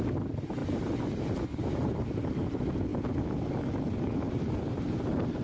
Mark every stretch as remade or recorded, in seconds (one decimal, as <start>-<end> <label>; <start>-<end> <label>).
0.0-5.4 recorded

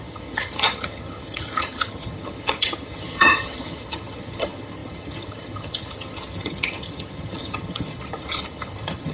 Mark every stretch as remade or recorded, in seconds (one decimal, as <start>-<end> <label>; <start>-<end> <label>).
0.0-9.1 remade

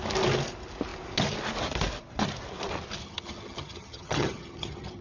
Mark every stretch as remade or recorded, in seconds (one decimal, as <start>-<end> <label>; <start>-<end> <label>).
0.0-3.0 recorded; 3.0-5.0 remade

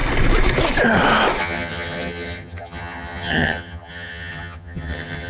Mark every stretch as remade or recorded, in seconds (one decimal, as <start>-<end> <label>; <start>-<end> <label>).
0.0-1.4 recorded; 1.4-5.3 remade

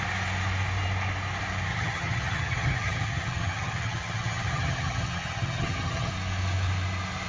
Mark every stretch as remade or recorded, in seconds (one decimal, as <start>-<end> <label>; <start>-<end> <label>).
0.0-1.7 recorded; 1.7-6.1 remade; 6.1-7.3 recorded